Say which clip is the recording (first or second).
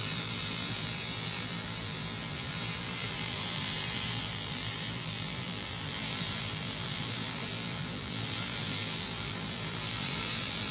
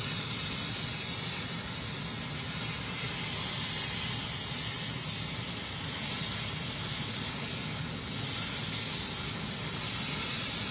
second